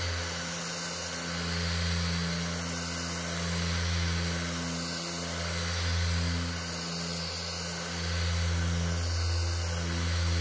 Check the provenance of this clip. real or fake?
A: real